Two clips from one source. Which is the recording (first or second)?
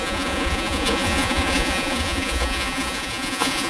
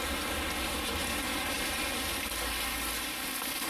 second